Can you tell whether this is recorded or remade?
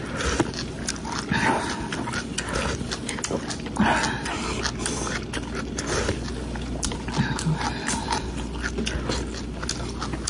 recorded